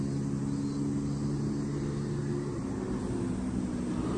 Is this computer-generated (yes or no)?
no